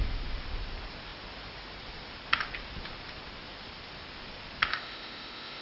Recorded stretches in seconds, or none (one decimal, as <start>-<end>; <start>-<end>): 0.0-4.7